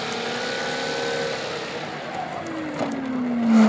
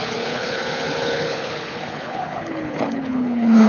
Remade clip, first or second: second